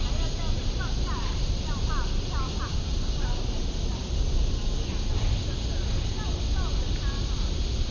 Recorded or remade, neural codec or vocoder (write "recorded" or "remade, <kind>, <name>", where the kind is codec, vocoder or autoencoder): recorded